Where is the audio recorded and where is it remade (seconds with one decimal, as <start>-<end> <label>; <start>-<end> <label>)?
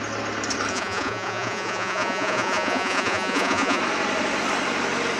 0.0-0.7 recorded; 0.7-3.8 remade; 3.8-5.2 recorded